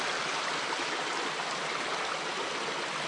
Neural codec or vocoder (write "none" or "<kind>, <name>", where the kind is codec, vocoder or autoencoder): none